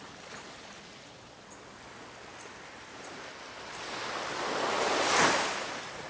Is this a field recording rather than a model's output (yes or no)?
yes